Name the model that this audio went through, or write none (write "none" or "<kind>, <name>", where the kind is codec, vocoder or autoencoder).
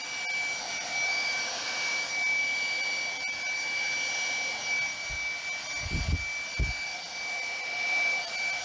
none